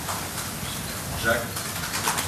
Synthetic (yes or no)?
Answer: no